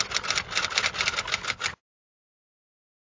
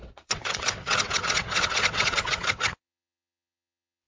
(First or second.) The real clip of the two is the first